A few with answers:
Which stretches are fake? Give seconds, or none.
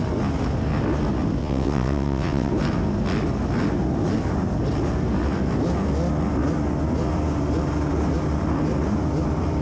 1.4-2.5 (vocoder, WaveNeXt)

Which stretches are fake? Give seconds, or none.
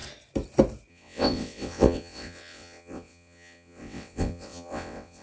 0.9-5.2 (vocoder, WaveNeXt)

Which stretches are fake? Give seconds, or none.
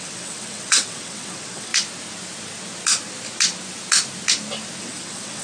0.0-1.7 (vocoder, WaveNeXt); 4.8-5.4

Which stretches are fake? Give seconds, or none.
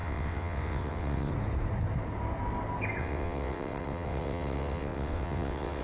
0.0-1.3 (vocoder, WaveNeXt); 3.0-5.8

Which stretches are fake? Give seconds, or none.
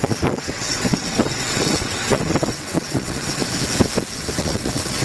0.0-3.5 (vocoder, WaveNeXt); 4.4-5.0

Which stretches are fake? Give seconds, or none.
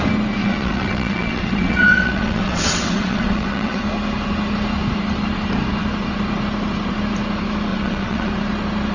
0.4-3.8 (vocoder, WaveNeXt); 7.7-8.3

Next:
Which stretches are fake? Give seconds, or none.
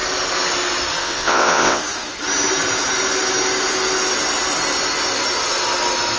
1.0-1.8 (vocoder, WaveNeXt)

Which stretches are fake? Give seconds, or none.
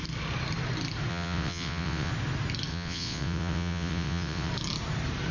1.1-2.1 (vocoder, WaveNeXt); 2.7-4.5